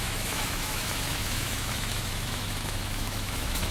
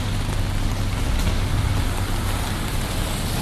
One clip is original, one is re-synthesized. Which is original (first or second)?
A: second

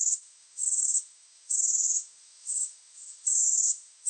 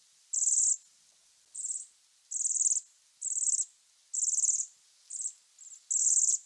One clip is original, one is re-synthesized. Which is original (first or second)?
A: second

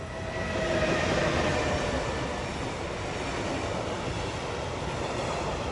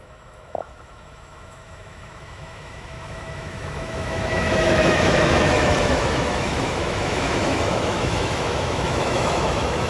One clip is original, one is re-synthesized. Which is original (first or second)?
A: first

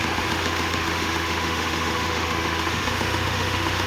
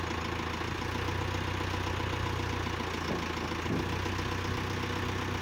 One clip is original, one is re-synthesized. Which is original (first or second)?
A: second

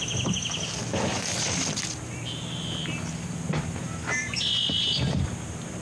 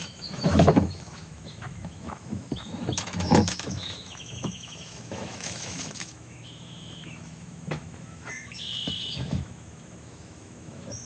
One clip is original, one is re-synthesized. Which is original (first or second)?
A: first